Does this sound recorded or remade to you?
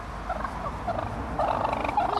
recorded